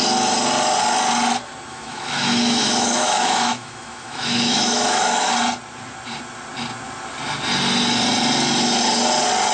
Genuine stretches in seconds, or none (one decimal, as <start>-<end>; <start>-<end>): 0.0-1.7; 5.3-9.5